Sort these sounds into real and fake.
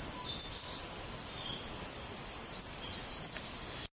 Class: real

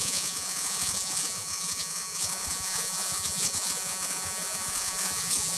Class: fake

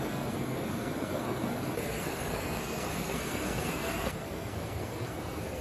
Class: fake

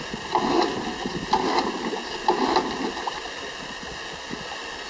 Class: real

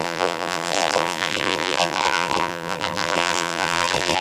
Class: fake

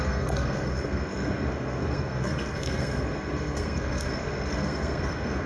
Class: fake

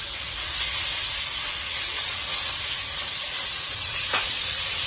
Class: fake